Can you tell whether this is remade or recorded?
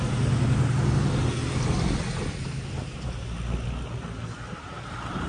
recorded